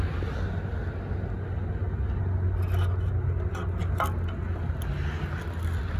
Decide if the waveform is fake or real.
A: real